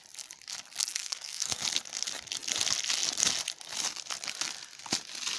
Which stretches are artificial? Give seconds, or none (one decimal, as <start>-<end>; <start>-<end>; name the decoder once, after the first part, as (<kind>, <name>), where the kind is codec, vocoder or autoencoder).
0.9-1.6 (codec, SNAC)